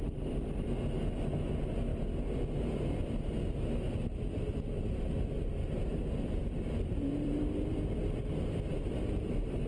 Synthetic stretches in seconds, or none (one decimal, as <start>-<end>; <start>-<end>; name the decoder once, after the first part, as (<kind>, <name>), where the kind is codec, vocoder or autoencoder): 5.6-8.2 (vocoder, BigVGAN v2); 8.7-9.7